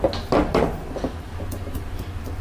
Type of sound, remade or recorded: recorded